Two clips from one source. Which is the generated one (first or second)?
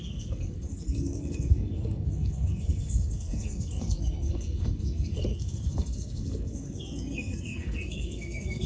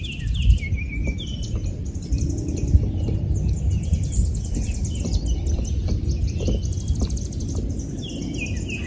first